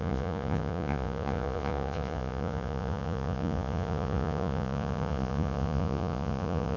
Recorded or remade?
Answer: remade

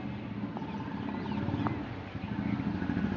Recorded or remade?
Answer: recorded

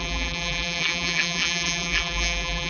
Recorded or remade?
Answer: remade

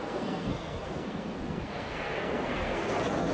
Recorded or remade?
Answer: remade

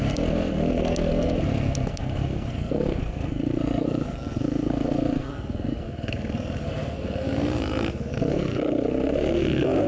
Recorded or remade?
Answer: remade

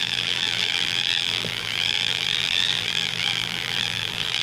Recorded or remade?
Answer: remade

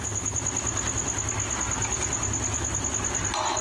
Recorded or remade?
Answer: recorded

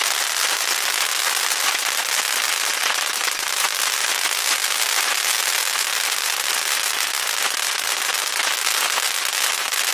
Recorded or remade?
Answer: recorded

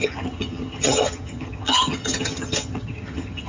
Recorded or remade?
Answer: remade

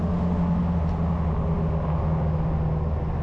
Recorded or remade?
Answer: recorded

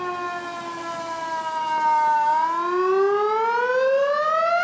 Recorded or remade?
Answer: recorded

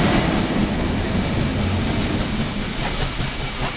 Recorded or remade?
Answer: recorded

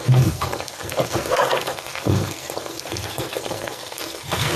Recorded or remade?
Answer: remade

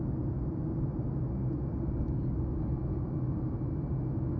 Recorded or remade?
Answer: recorded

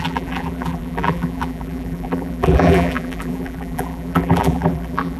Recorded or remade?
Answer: remade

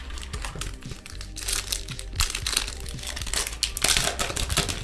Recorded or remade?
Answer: recorded